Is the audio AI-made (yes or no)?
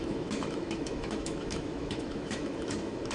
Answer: yes